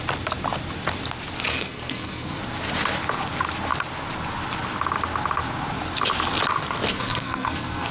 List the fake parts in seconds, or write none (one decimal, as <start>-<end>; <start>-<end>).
1.5-2.4; 6.9-7.9